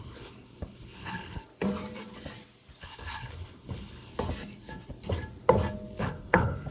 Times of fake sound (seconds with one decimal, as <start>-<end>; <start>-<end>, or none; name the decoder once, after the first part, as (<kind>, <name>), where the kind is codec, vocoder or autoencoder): 0.0-1.5 (codec, HILCodec); 2.8-4.1; 6.0-6.7